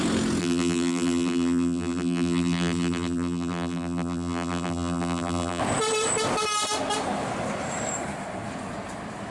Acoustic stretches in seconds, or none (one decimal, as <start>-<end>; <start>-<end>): 0.0-0.4; 5.6-9.3